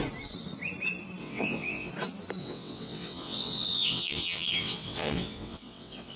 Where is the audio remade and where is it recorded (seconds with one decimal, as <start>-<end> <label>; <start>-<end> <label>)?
0.0-1.2 recorded; 1.2-1.9 remade; 1.9-2.4 recorded; 2.4-6.2 remade